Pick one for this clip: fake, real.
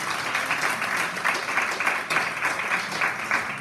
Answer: real